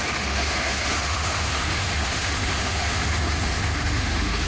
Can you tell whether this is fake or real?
fake